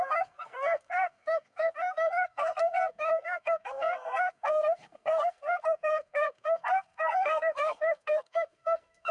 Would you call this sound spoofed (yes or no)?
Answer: yes